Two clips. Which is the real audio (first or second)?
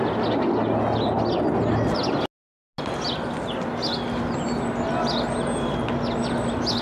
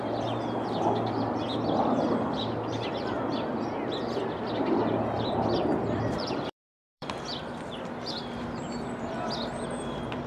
first